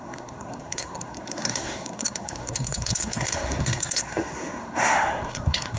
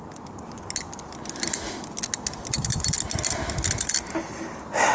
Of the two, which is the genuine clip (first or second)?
second